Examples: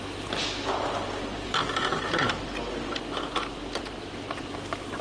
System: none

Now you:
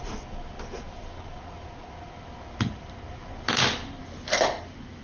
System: none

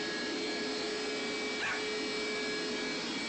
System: none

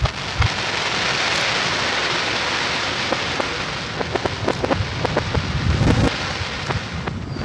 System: none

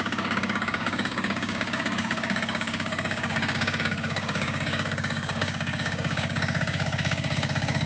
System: codec, DAC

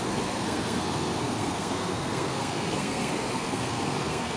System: codec, SNAC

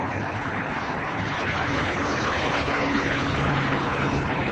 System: codec, HILCodec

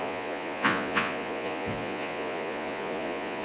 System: vocoder, Vocos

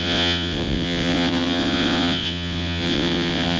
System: vocoder, WaveNeXt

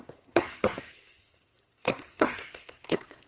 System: codec, SNAC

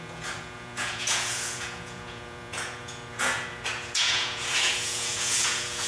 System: vocoder, Vocos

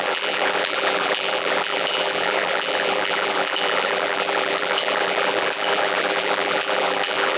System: vocoder, BigVGAN v2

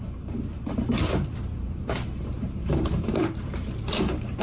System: vocoder, BigVGAN v2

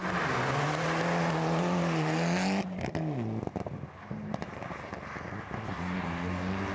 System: none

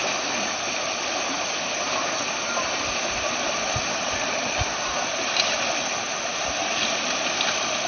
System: none